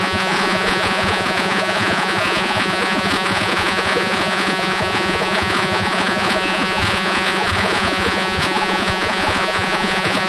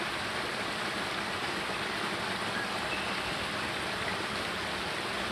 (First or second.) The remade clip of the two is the first